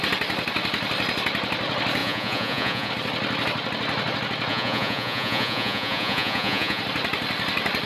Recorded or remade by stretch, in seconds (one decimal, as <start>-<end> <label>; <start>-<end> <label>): 0.0-2.0 recorded; 2.0-2.9 remade; 2.9-4.5 recorded; 4.5-6.8 remade; 6.8-7.9 recorded

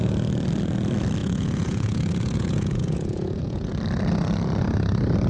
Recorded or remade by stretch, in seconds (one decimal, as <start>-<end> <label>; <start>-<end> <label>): 0.0-1.2 recorded; 1.2-3.7 remade; 3.7-5.3 recorded